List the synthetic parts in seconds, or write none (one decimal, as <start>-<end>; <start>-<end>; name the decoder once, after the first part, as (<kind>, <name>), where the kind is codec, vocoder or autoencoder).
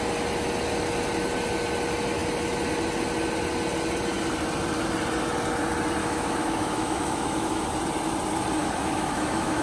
6.0-7.6 (autoencoder, DAC-VAE); 8.6-9.6